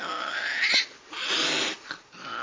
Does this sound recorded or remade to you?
recorded